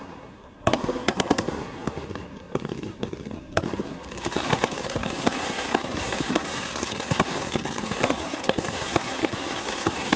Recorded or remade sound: remade